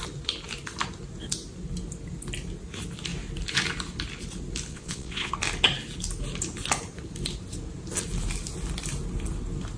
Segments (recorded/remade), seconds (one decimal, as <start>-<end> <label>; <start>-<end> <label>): 0.0-4.7 recorded; 4.7-5.3 remade; 5.3-9.8 recorded